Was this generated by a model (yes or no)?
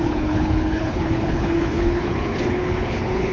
yes